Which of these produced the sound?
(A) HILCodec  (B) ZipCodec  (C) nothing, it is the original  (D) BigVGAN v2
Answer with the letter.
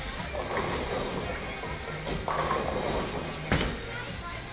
C